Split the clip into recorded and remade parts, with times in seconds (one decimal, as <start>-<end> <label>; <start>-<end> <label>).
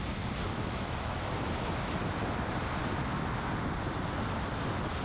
0.0-0.5 recorded; 0.5-1.3 remade; 1.3-5.0 recorded